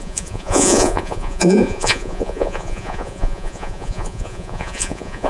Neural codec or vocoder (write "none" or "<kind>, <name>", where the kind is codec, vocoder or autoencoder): vocoder, Vocos